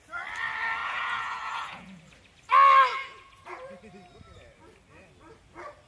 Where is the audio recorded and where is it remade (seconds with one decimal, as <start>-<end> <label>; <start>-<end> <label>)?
0.0-0.8 recorded; 0.8-2.0 remade; 2.0-2.9 recorded; 2.9-3.7 remade; 3.7-5.9 recorded